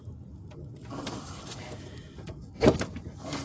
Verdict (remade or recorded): recorded